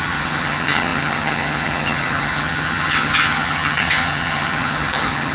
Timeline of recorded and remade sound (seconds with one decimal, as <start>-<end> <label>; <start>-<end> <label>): 0.0-5.3 remade